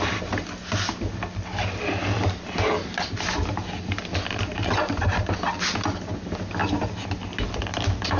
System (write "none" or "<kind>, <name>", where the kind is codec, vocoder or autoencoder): none